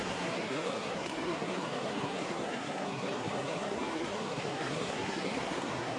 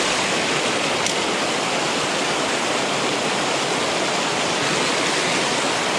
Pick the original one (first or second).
second